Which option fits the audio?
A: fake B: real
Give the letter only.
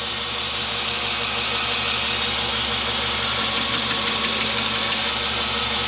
B